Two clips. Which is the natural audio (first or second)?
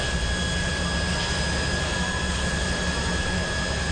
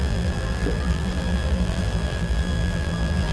first